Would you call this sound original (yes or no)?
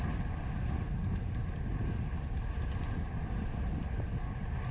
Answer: yes